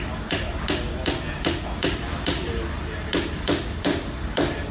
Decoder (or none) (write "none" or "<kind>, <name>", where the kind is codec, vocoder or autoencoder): none